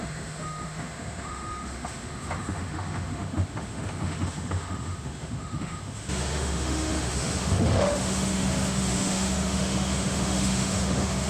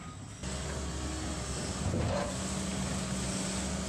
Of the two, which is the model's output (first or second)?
first